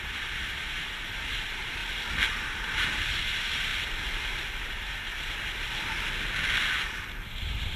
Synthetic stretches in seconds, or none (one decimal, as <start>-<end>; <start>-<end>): 0.0-1.8; 2.4-3.7; 4.6-5.1; 7.3-7.8